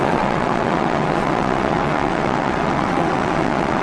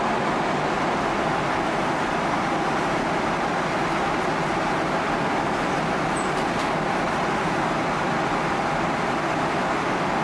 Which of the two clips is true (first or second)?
second